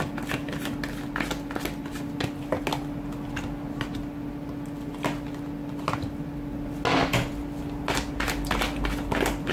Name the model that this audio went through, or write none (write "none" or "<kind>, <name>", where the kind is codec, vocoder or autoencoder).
none